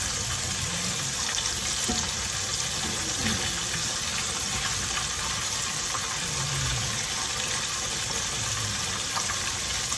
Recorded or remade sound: recorded